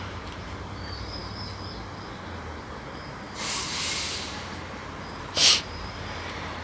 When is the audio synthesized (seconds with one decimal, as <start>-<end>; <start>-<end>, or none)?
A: 0.0-1.2; 5.2-6.6